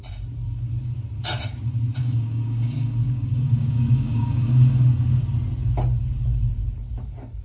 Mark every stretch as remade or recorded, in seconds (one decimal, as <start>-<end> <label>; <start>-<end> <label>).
0.0-2.0 recorded; 2.0-5.2 remade; 5.2-7.4 recorded